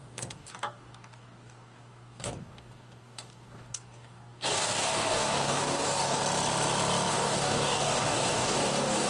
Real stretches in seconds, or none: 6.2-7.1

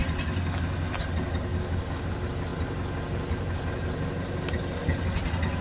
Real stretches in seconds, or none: 0.0-1.5; 2.0-5.6